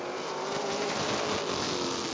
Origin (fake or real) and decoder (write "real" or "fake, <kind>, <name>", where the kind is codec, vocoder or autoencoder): real